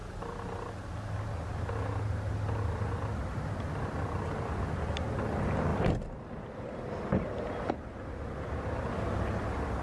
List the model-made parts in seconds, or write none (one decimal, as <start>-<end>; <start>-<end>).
none